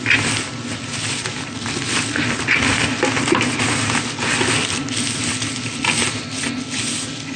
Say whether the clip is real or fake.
real